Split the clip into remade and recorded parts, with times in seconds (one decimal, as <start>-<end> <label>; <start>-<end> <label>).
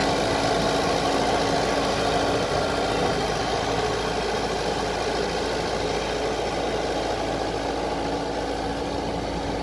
0.0-9.6 recorded